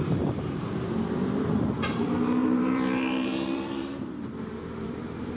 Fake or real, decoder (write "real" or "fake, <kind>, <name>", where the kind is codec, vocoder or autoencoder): fake, vocoder, BigVGAN v2